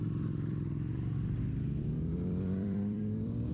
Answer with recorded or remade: remade